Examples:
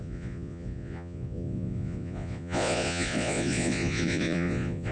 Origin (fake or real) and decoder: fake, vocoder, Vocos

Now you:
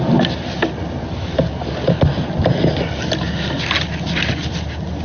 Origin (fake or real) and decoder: real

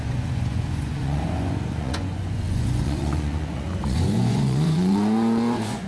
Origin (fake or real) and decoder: fake, vocoder, Vocos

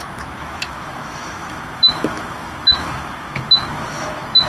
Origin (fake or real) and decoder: fake, autoencoder, DAC-VAE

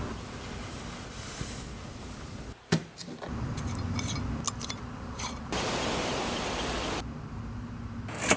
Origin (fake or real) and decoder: real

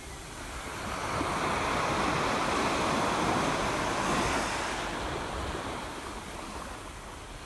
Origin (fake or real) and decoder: real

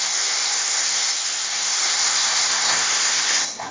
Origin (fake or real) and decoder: fake, codec, SNAC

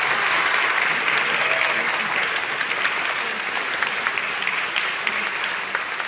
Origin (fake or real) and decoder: real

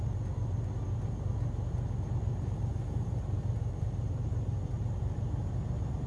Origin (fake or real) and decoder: real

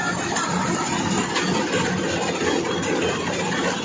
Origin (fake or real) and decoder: real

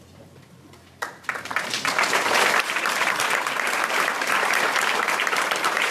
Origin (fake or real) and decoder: fake, vocoder, BigVGAN v2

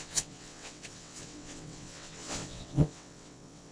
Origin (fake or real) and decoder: fake, vocoder, WaveNeXt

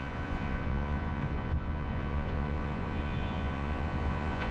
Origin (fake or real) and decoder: fake, vocoder, Vocos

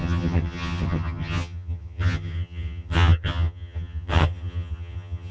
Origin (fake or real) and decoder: fake, vocoder, HiFi-GAN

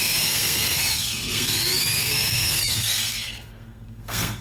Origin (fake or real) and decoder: fake, codec, SNAC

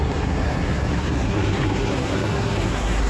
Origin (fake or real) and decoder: fake, codec, SNAC